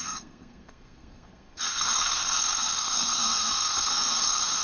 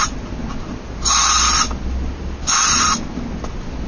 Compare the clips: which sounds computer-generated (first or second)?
first